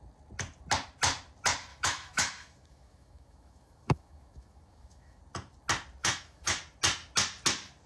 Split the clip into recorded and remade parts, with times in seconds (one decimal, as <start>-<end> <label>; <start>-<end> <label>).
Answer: 0.0-1.7 recorded; 1.7-5.2 remade; 5.2-6.0 recorded; 6.0-6.6 remade; 6.6-7.9 recorded

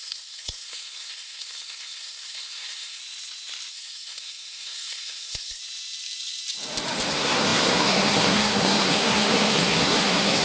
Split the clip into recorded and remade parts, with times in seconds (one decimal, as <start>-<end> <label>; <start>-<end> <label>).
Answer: 0.0-3.0 remade; 3.0-3.7 recorded; 3.7-5.6 remade; 5.6-7.1 recorded; 7.1-10.4 remade